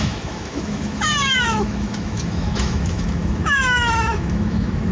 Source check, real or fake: fake